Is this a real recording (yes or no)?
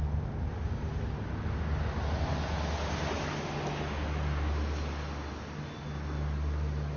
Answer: yes